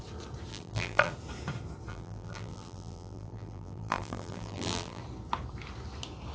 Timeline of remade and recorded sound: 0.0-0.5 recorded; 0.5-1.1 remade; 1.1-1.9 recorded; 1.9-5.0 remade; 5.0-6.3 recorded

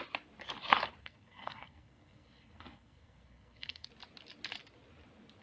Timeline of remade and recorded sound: 0.0-1.0 recorded; 1.0-3.9 remade; 3.9-5.4 recorded

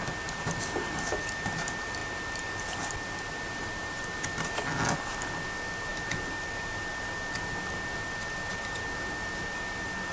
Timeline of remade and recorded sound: 0.0-10.1 recorded

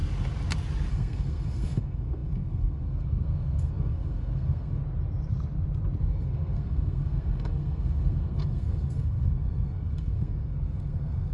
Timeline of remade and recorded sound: 0.0-0.9 recorded; 0.9-4.8 remade; 4.8-6.0 recorded; 6.0-11.3 remade